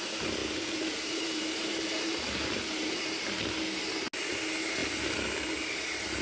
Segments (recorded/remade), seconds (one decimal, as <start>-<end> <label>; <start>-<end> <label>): 0.0-0.4 recorded; 0.4-2.9 remade; 2.9-6.2 recorded